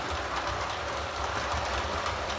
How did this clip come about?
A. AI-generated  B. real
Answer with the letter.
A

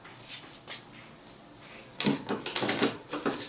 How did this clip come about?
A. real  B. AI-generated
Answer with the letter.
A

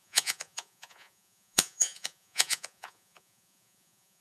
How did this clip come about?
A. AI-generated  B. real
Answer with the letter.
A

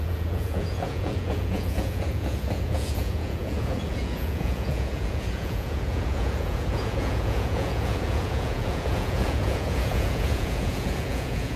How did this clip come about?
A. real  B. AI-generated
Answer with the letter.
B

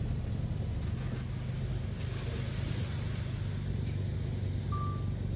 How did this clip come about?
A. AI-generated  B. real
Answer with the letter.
B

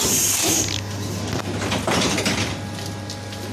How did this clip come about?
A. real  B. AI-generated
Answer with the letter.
A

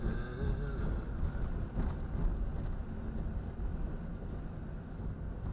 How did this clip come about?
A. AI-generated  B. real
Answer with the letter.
B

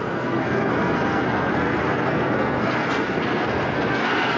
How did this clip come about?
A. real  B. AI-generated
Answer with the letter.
B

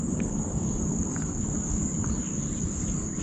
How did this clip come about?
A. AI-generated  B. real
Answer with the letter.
A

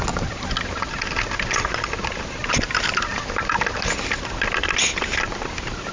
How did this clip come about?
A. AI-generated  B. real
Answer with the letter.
B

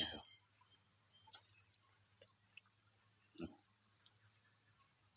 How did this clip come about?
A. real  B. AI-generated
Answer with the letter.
A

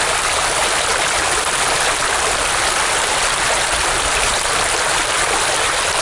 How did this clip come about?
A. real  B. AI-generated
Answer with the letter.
A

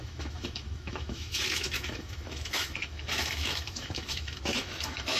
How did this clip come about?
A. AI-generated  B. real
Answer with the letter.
A